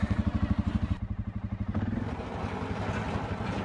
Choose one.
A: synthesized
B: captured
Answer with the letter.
B